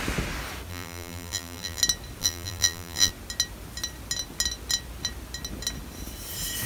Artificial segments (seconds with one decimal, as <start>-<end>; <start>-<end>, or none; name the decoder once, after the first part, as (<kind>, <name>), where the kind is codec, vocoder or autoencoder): 0.7-1.8 (vocoder, BigVGAN v2); 2.2-3.1